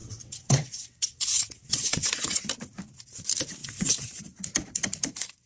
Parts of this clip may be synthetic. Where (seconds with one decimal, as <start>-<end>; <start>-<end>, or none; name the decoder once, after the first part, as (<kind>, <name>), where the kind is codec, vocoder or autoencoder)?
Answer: 0.0-2.4 (vocoder, WaveNeXt); 3.6-4.2